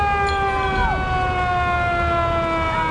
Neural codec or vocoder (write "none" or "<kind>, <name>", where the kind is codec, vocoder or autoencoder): none